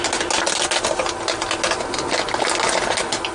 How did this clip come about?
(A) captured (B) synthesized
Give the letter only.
A